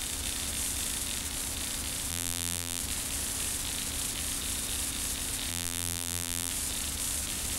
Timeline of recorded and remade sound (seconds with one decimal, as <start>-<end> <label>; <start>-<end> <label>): 0.0-2.1 recorded; 2.1-2.8 remade; 2.8-5.5 recorded; 5.5-6.5 remade; 6.5-7.6 recorded